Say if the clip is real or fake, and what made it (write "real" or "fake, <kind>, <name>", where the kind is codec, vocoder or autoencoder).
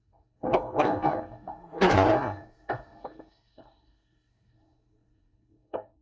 fake, codec, SNAC